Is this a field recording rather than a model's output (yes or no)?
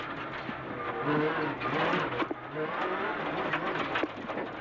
yes